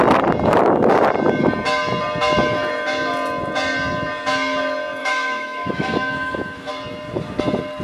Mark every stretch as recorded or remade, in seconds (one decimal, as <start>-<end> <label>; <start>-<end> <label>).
0.0-5.0 recorded; 5.0-6.7 remade; 6.7-7.8 recorded

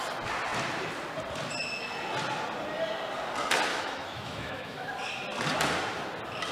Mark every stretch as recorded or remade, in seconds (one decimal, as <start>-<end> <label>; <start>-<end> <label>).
0.0-3.7 recorded; 3.7-4.9 remade; 4.9-6.5 recorded

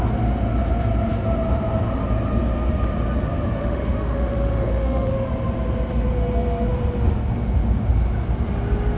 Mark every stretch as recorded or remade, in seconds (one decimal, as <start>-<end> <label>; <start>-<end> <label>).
0.0-3.6 recorded; 3.6-5.1 remade; 5.1-9.0 recorded

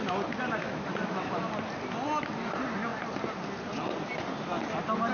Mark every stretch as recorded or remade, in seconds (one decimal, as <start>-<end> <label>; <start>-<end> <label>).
0.0-0.6 recorded; 0.6-1.5 remade; 1.5-5.1 recorded

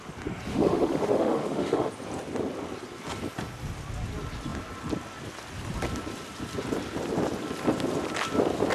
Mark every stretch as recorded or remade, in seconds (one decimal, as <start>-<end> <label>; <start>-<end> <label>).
0.0-0.5 recorded; 0.5-1.9 remade; 1.9-8.7 recorded

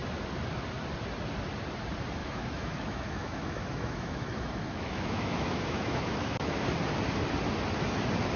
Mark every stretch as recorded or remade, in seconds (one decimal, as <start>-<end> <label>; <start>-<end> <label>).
0.0-2.2 recorded; 2.2-6.6 remade; 6.6-8.4 recorded